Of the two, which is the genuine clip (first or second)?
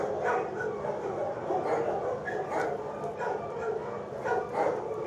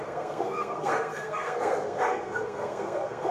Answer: first